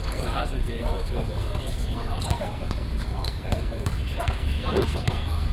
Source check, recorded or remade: remade